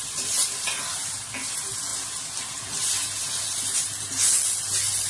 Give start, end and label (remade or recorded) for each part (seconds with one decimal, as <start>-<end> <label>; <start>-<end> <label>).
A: 0.0-5.1 recorded